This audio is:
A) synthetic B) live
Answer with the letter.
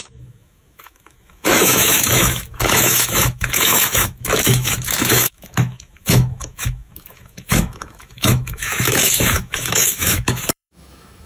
A